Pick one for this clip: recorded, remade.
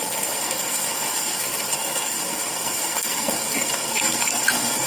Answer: remade